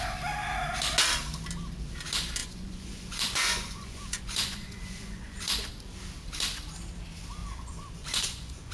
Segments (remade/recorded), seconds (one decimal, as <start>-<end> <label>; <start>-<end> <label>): 0.0-2.4 recorded; 2.4-5.7 remade; 5.7-7.4 recorded; 7.4-8.7 remade